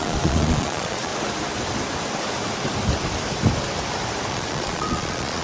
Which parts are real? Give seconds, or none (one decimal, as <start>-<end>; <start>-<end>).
1.1-4.3